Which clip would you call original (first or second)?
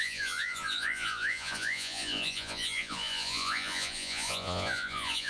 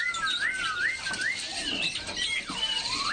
second